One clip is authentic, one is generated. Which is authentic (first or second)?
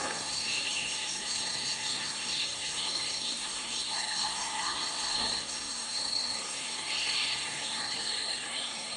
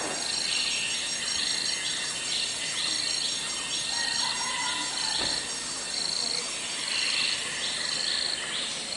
second